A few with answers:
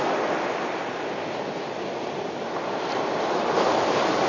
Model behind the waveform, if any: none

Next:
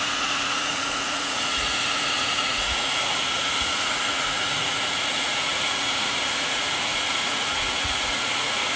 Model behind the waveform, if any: vocoder, Vocos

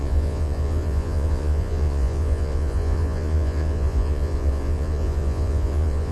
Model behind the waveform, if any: vocoder, Vocos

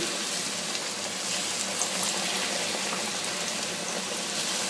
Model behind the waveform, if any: none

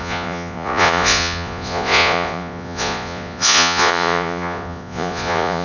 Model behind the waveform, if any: vocoder, Vocos